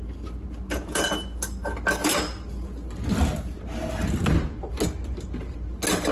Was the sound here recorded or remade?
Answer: recorded